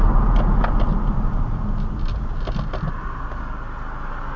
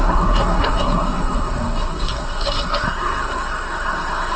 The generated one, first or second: second